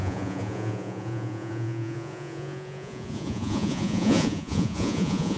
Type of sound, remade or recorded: remade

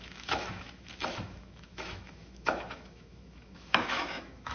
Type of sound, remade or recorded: remade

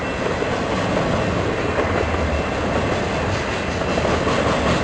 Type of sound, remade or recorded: recorded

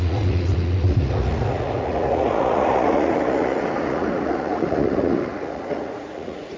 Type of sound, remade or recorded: remade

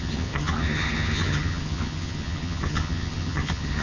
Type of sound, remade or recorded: remade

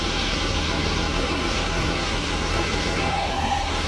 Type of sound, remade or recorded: remade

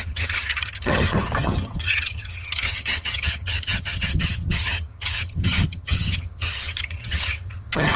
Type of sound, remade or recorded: remade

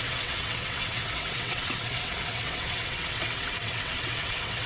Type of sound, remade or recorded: remade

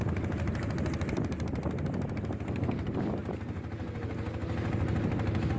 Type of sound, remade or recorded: recorded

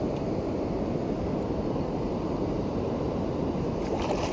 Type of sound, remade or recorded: recorded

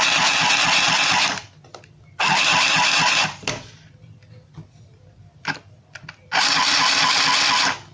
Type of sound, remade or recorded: recorded